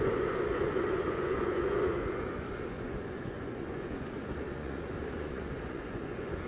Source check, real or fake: fake